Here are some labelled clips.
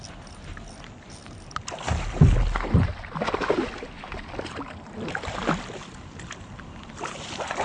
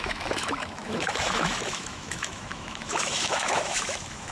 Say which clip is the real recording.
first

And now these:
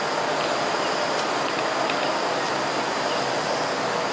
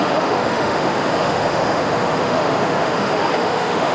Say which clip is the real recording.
first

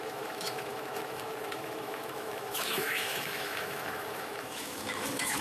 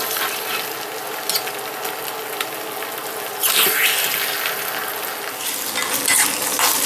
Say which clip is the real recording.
second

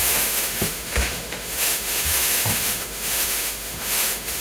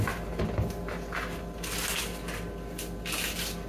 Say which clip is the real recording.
second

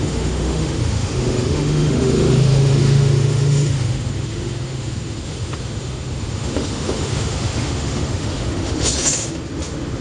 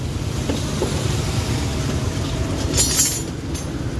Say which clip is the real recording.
second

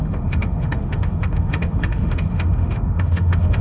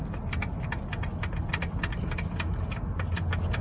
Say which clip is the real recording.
second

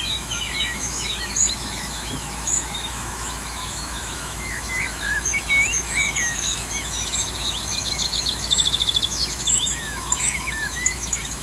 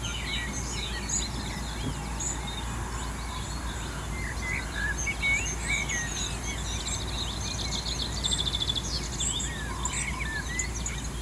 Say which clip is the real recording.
second